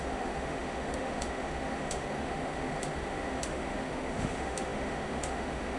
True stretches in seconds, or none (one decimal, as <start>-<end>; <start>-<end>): none